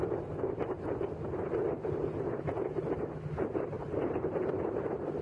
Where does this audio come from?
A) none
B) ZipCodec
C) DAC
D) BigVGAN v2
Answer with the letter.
A